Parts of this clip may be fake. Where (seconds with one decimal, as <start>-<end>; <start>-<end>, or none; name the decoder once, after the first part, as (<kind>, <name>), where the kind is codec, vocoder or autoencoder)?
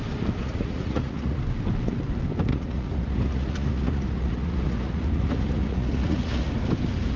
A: 0.4-1.4 (vocoder, Vocos); 2.5-6.5